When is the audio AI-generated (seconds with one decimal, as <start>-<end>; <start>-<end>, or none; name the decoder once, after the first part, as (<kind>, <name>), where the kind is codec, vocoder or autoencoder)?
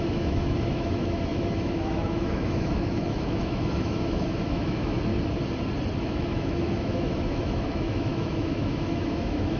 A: 0.0-5.1 (autoencoder, DAC-VAE); 6.0-9.6